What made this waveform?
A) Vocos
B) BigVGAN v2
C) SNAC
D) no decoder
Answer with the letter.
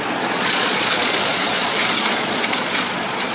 A